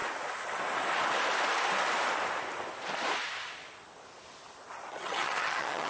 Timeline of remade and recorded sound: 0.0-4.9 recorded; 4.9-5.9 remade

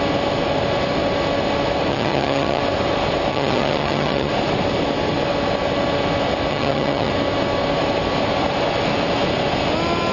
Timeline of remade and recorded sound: 0.0-1.9 recorded; 1.9-2.6 remade; 2.6-3.3 recorded; 3.3-4.3 remade; 4.3-6.5 recorded; 6.5-7.1 remade; 7.1-10.1 recorded

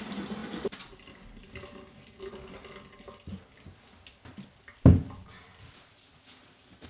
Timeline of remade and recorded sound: 0.0-6.9 recorded

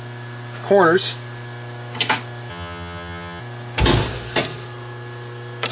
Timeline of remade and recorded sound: 0.0-2.5 recorded; 2.5-3.4 remade; 3.4-5.7 recorded

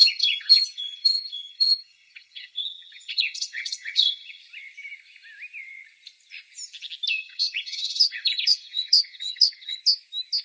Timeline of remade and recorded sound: 0.0-4.4 remade; 4.4-7.1 recorded; 7.1-9.8 remade; 9.8-10.4 recorded

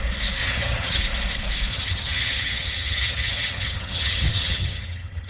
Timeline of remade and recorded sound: 0.0-0.4 recorded; 0.4-1.0 remade; 1.0-1.7 recorded; 1.7-5.3 remade